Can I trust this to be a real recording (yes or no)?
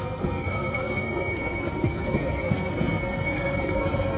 no